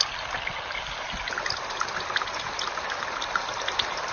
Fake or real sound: real